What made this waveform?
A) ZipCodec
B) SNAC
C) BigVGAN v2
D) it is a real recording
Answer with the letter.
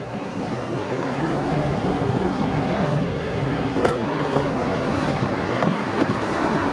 B